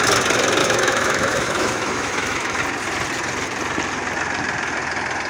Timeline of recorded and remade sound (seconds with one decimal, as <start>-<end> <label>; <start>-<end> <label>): 0.0-0.6 recorded; 0.6-2.6 remade; 2.6-5.3 recorded